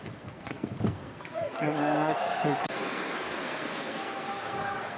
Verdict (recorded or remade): remade